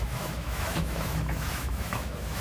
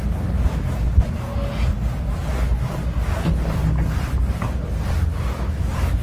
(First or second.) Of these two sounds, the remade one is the first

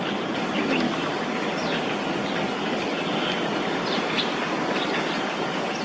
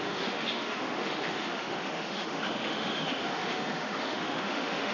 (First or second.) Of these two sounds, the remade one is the second